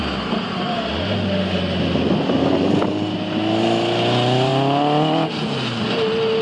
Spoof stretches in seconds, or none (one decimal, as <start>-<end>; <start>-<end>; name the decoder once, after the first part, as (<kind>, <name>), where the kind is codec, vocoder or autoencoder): none